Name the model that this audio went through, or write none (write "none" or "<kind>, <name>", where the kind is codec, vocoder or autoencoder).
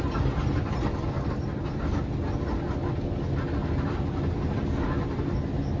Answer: none